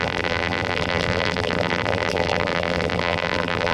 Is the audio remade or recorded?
remade